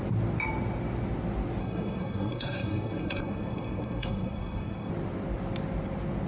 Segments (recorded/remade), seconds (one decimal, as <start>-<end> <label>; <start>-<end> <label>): 0.0-1.6 recorded; 1.6-4.9 remade; 4.9-6.3 recorded